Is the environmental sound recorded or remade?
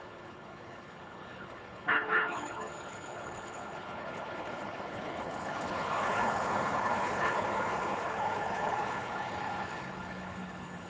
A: remade